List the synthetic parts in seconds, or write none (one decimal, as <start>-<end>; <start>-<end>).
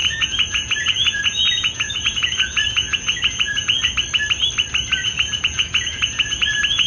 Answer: 0.0-3.9; 5.0-6.9